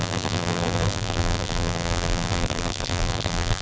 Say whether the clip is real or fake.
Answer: fake